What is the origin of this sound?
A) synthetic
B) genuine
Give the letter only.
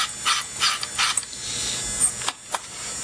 B